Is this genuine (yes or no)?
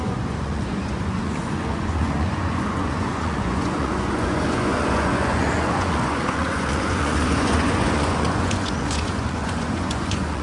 no